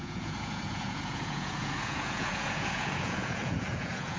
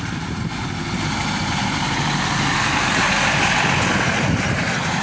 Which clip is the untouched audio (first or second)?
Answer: second